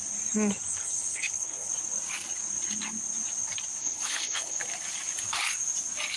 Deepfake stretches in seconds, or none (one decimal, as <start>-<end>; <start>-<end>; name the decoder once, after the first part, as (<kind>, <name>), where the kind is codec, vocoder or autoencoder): 0.7-1.7 (codec, HILCodec); 3.8-4.6